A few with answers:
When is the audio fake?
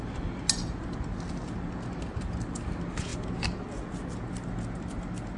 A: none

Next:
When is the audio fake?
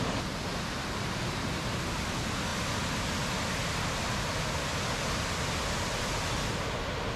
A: none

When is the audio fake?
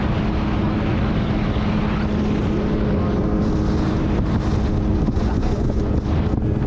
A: 4.9-5.9 (vocoder, Vocos)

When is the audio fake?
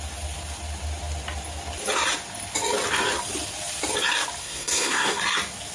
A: 4.4-5.2 (codec, SNAC)